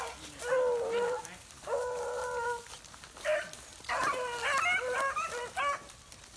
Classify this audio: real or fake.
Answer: real